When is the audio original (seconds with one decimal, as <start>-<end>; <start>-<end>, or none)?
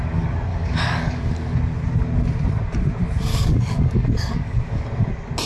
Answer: 0.0-0.5; 1.3-3.3; 4.8-5.5